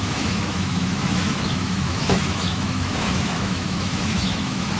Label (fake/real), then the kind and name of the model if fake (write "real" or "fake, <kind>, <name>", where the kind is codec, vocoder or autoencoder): fake, autoencoder, DAC-VAE